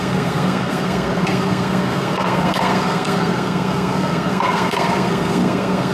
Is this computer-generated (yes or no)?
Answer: yes